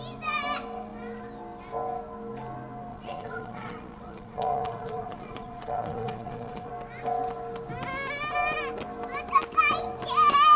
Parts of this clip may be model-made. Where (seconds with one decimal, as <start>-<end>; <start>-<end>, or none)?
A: 2.9-6.7